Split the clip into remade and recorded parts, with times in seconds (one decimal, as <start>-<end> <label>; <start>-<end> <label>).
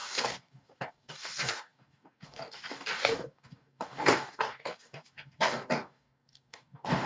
0.0-7.1 remade